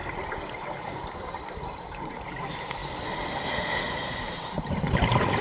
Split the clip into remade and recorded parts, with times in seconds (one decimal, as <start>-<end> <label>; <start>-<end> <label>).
0.0-5.4 remade